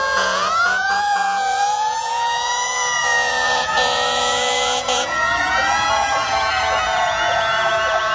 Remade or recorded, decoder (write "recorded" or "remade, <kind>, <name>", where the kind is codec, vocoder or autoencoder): remade, vocoder, Vocos